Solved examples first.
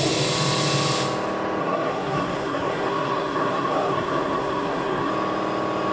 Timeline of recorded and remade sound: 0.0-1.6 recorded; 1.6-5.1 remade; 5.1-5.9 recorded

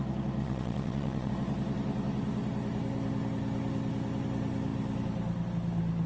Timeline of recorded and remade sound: 0.0-0.4 recorded; 0.4-1.3 remade; 1.3-6.1 recorded